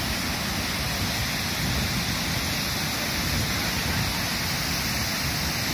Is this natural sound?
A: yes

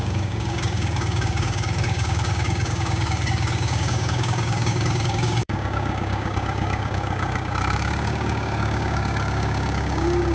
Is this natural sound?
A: no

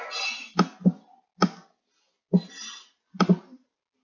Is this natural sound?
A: yes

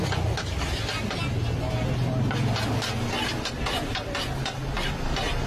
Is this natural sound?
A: yes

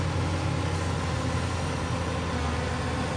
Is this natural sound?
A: yes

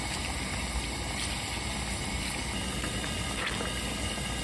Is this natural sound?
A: yes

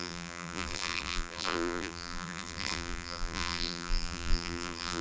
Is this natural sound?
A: no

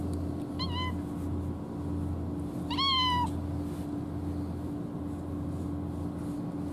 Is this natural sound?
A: yes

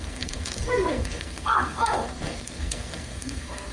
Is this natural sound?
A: no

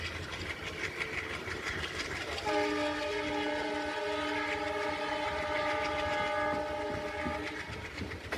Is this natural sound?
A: yes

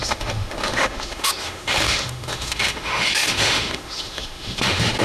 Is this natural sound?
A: no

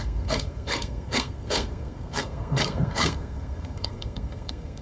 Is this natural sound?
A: no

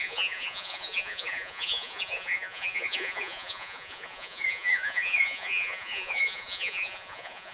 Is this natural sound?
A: no